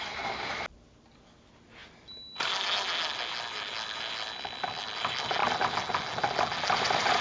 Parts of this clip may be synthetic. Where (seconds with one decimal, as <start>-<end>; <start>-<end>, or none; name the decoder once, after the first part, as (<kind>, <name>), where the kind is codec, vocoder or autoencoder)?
none